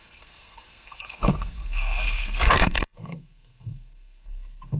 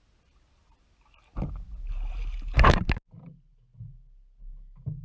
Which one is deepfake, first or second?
first